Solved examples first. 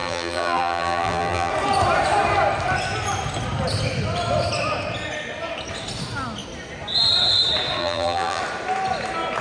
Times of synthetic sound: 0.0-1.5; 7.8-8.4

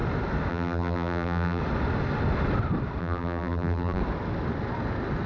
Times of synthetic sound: 0.5-1.6; 3.0-4.0

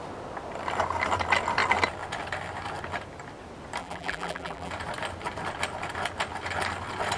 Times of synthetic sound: 3.8-4.7

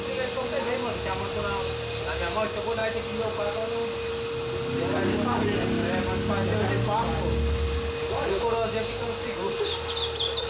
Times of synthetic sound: none

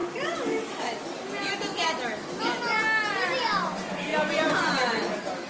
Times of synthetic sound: 0.0-1.7; 3.1-4.1

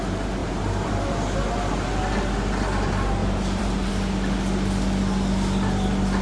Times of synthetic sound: 0.4-0.9; 3.2-3.9

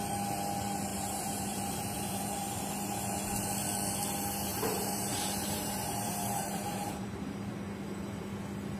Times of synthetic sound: 0.9-2.2; 4.5-7.5

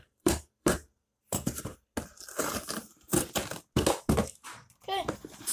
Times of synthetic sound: 0.0-1.7; 2.4-3.1; 4.2-5.5